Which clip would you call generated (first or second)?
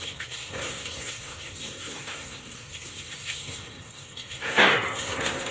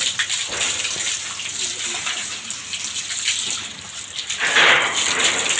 first